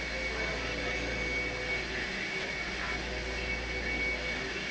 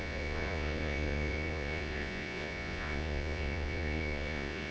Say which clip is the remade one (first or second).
second